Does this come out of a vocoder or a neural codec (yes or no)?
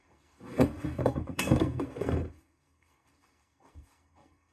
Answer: yes